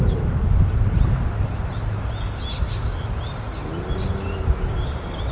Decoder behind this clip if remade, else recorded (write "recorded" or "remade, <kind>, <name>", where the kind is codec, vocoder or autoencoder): recorded